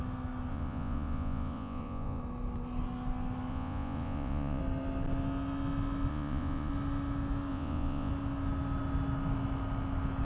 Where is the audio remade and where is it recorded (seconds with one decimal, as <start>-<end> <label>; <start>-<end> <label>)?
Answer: 0.0-0.5 recorded; 0.5-2.2 remade; 2.2-3.5 recorded; 3.5-4.6 remade; 4.6-6.1 recorded; 6.1-6.7 remade; 6.7-7.5 recorded; 7.5-8.1 remade; 8.1-10.2 recorded